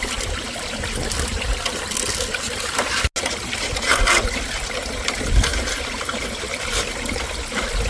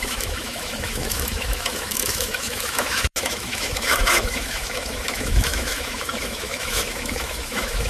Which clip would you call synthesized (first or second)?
second